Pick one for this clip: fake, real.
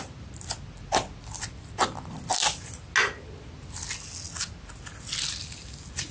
real